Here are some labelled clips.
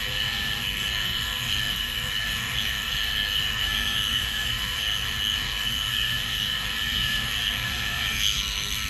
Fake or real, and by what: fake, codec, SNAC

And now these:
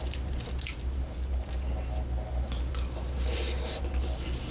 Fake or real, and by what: real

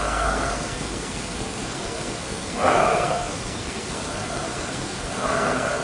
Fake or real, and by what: fake, codec, SNAC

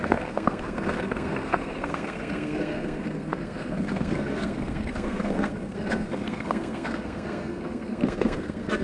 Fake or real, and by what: fake, codec, SNAC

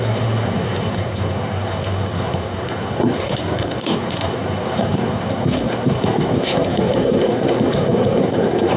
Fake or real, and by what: fake, codec, SNAC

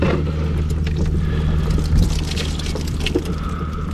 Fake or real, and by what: real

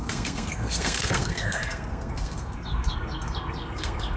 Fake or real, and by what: fake, codec, SNAC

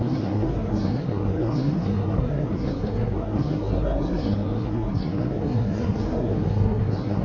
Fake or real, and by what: fake, codec, SNAC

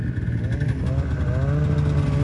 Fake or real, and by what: real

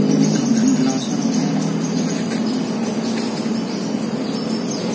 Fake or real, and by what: real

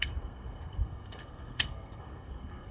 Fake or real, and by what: fake, codec, SNAC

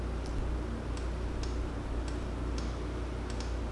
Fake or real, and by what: real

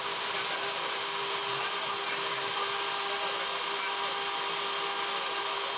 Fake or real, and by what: real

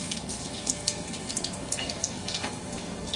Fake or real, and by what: fake, codec, SNAC